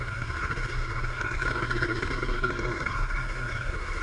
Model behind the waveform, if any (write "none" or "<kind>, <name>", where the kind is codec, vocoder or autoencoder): codec, SNAC